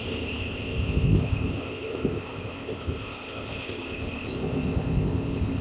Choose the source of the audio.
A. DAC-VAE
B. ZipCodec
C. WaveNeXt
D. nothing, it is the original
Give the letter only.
B